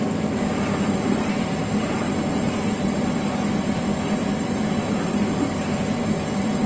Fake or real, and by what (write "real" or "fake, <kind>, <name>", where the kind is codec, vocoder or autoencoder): fake, vocoder, BigVGAN v2